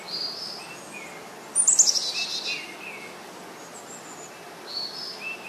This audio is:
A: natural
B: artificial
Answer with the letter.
A